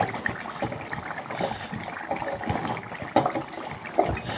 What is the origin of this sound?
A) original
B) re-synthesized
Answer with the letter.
A